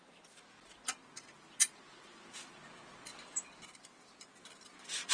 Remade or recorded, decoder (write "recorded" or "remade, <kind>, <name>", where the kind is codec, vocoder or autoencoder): recorded